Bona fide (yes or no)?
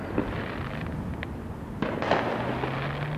yes